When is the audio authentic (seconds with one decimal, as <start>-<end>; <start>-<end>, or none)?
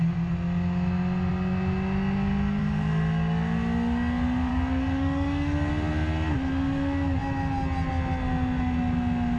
0.0-4.5; 5.7-9.4